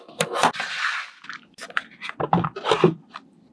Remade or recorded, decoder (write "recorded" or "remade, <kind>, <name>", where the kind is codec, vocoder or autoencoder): remade, vocoder, BigVGAN v2